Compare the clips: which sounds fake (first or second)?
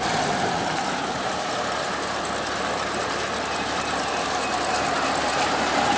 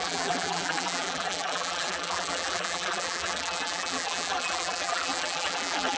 second